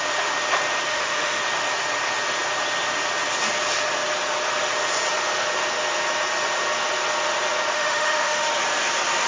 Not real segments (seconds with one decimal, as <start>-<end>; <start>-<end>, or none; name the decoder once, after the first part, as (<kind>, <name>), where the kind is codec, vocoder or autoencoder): 0.9-1.4 (autoencoder, DAC-VAE); 7.7-8.5